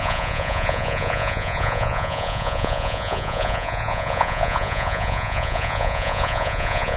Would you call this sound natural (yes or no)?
no